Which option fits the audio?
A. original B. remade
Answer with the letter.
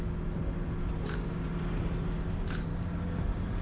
A